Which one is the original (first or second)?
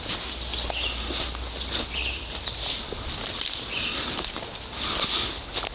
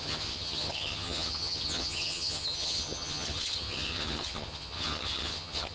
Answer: first